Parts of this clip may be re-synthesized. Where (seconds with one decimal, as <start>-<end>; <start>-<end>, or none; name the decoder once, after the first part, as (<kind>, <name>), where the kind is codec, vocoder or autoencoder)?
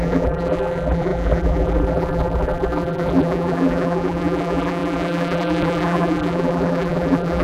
0.0-7.4 (vocoder, BigVGAN v2)